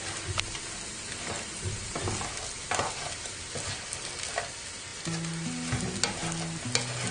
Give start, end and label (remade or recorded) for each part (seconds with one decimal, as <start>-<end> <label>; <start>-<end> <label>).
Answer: 0.0-7.1 recorded